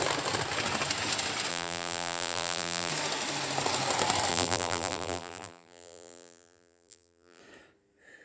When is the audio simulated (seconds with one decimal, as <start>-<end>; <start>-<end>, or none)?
1.5-2.9; 4.3-7.4